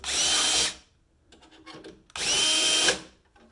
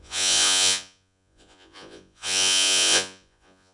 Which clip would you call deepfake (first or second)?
second